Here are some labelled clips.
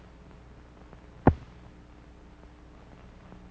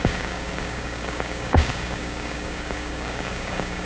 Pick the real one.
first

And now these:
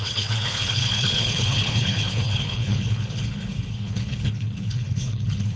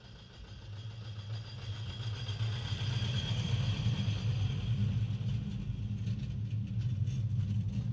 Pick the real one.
second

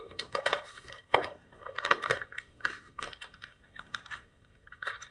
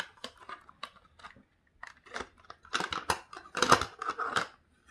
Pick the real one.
second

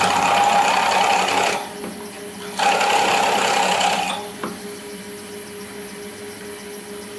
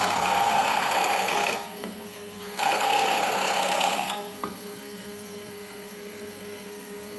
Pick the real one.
first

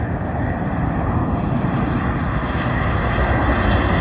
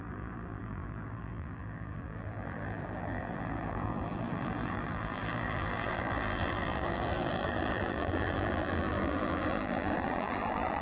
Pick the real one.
first